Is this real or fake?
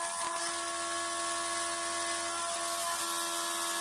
real